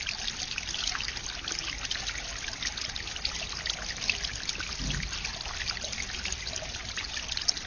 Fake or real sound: real